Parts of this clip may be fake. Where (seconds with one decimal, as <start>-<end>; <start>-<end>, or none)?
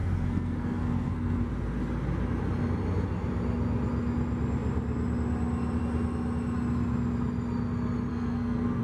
0.0-1.5; 8.1-8.8